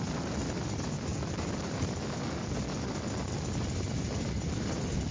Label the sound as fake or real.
real